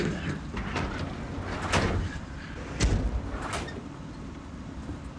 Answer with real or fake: real